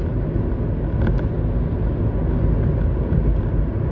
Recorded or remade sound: recorded